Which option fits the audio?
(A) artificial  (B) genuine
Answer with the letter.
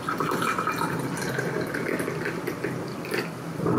B